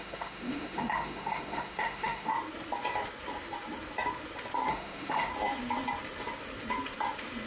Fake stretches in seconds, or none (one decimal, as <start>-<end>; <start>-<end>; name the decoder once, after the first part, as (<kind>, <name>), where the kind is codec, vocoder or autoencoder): 0.0-2.3 (autoencoder, DAC-VAE); 4.7-5.3

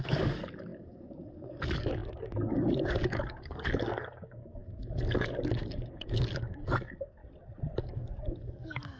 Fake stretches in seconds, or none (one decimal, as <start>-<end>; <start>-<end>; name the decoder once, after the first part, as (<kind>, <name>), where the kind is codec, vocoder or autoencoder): 0.0-7.2 (codec, DAC); 7.8-9.0

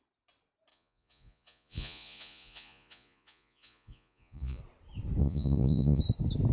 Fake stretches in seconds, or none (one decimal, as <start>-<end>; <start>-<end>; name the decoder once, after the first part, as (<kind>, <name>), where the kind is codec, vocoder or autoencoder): 0.7-4.6 (vocoder, Vocos); 5.2-6.0

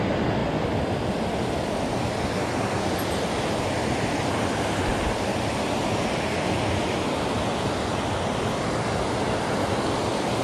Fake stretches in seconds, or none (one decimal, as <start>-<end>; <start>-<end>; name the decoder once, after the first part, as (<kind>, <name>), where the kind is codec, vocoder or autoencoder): none

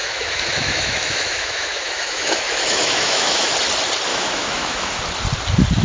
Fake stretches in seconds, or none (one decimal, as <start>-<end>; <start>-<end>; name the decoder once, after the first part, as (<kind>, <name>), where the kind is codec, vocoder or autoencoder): 0.0-3.5 (autoencoder, DAC-VAE); 4.1-5.0

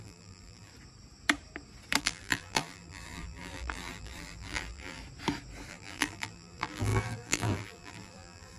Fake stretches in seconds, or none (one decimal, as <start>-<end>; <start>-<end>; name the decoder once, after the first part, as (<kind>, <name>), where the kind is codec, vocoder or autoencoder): 0.0-0.7 (vocoder, BigVGAN v2); 2.0-5.0; 5.7-8.6

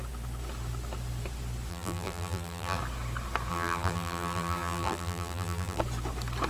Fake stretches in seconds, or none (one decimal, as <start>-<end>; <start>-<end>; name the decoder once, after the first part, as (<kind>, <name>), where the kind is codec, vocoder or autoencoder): 1.7-2.8 (vocoder, BigVGAN v2); 3.5-5.8

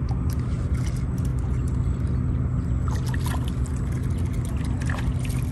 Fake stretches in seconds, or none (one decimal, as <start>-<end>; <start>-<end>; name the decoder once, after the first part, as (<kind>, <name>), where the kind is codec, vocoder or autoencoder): none